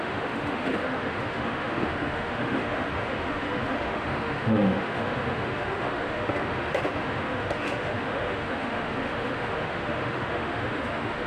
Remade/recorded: remade